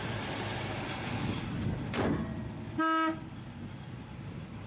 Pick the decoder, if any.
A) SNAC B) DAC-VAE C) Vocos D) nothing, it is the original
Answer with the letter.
D